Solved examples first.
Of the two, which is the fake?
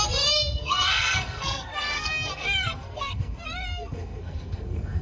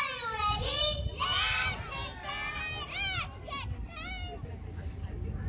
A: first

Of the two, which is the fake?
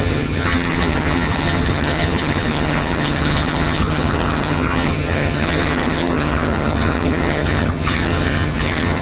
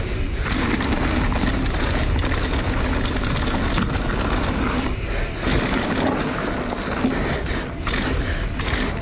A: first